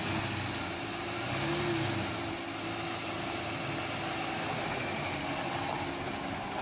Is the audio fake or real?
real